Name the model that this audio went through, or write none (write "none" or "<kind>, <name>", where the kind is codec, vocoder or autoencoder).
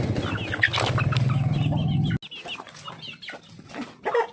none